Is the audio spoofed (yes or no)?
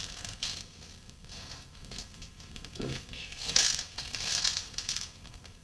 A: yes